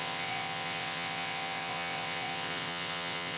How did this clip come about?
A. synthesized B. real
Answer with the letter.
A